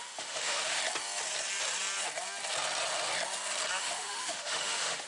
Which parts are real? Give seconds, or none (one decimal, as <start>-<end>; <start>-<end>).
0.8-3.8